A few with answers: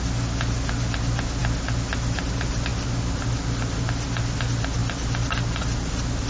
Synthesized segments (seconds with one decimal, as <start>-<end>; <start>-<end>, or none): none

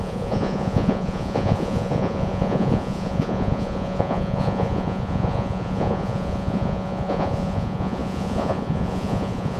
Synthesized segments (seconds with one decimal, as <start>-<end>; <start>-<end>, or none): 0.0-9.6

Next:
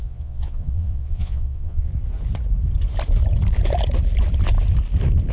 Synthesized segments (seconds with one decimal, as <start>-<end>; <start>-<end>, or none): 0.0-1.9

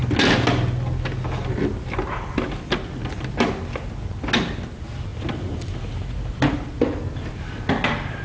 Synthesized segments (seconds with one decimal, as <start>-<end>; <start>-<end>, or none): none